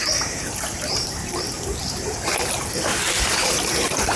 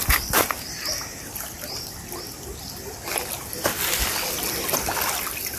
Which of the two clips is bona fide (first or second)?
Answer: second